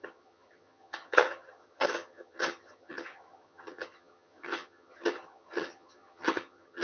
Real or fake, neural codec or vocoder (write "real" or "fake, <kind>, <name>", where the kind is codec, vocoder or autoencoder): fake, vocoder, HiFi-GAN